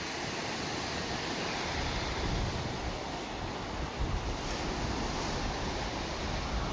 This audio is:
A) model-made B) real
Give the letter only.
B